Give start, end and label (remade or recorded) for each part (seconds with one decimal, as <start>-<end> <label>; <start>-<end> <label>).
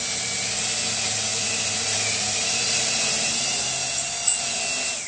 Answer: 0.0-1.3 recorded; 1.3-2.8 remade; 2.8-5.1 recorded